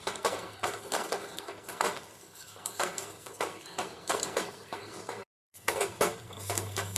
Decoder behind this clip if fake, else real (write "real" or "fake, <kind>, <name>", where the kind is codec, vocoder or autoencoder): fake, codec, SNAC